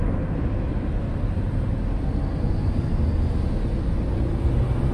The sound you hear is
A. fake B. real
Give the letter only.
B